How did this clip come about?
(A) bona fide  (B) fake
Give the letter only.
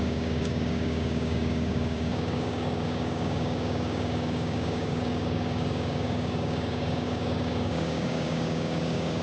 B